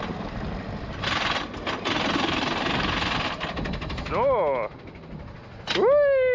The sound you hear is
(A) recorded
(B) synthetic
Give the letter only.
A